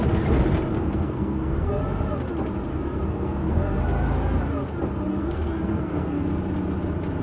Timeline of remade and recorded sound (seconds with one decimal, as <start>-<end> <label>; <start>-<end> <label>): 0.0-0.7 recorded; 0.7-1.8 remade; 1.8-2.7 recorded; 2.7-3.8 remade; 3.8-5.1 recorded; 5.1-6.2 remade; 6.2-7.2 recorded